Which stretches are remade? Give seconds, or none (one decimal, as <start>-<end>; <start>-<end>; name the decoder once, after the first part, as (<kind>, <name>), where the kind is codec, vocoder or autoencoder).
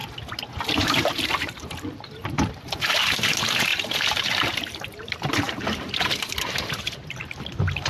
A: 0.8-7.9 (vocoder, BigVGAN v2)